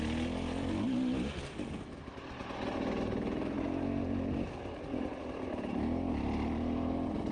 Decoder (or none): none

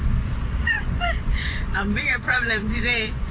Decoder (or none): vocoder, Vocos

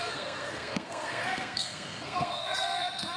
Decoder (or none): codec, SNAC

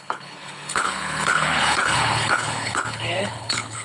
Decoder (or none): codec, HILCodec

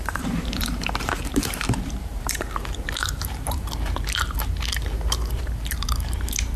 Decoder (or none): vocoder, BigVGAN v2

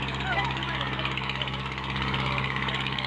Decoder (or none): codec, DAC